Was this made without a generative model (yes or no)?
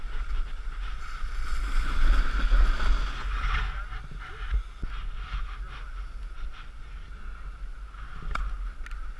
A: yes